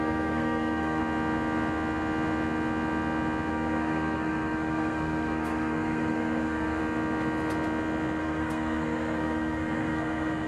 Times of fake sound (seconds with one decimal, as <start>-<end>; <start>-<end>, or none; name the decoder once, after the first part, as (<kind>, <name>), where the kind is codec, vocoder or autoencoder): 0.0-1.0 (codec, SNAC); 3.5-6.8; 8.2-10.5